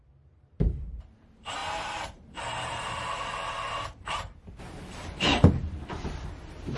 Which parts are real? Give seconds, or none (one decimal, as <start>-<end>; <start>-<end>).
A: none